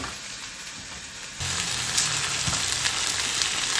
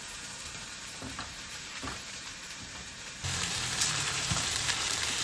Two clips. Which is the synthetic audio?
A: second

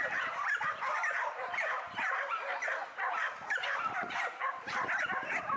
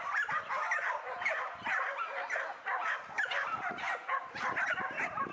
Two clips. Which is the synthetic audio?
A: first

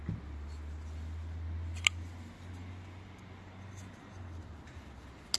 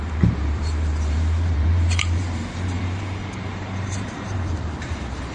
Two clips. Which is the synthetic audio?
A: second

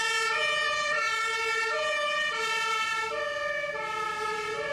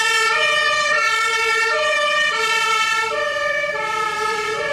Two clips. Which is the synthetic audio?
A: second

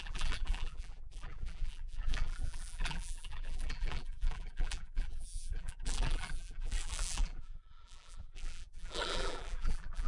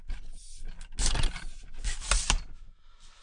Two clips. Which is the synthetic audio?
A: first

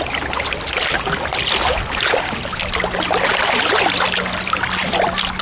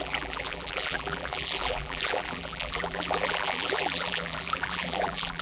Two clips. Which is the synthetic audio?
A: second